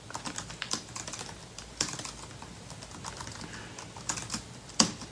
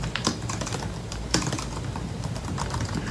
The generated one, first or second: second